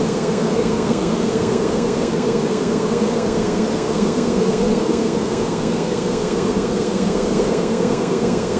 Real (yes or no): no